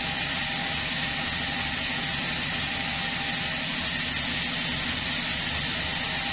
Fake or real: real